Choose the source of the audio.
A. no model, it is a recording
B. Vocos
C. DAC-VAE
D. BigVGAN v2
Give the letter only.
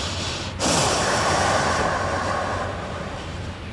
A